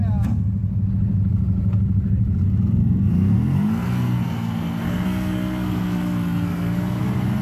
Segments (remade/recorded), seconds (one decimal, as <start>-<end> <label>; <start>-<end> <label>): 0.0-2.8 recorded; 2.8-7.0 remade; 7.0-7.4 recorded